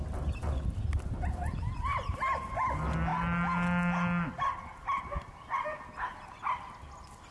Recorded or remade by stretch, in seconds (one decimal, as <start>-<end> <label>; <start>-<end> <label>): 0.0-7.3 recorded